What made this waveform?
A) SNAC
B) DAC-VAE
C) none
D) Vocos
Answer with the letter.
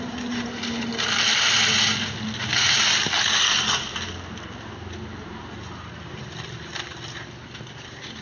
C